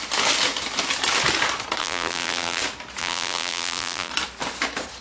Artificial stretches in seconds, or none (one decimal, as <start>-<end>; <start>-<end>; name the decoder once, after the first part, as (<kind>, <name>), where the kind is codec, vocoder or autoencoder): 1.8-2.6 (vocoder, BigVGAN v2); 3.0-4.1